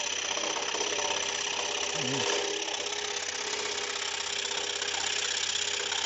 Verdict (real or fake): real